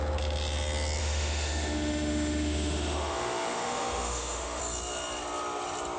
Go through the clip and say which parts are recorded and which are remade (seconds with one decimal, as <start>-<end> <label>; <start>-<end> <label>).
0.0-1.0 recorded; 1.0-4.6 remade; 4.6-6.0 recorded

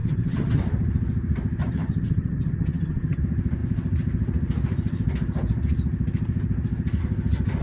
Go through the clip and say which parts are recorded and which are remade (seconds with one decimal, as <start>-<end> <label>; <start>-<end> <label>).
0.0-0.6 remade; 0.6-1.6 recorded; 1.6-3.2 remade; 3.2-7.6 recorded